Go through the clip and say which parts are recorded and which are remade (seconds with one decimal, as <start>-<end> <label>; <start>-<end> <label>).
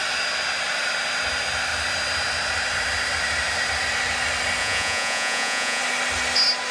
0.0-4.6 recorded; 4.6-5.8 remade; 5.8-6.7 recorded